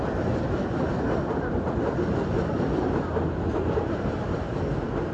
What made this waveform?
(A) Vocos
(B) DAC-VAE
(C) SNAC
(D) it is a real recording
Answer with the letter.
D